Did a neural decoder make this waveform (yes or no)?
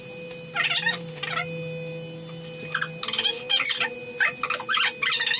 no